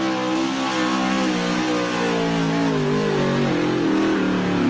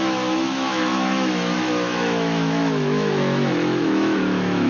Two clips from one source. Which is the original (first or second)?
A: first